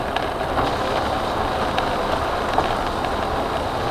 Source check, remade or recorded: recorded